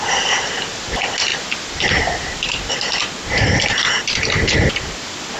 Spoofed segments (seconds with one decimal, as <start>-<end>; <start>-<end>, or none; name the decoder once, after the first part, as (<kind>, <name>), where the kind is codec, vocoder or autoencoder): none